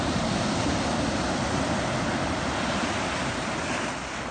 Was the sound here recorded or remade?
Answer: recorded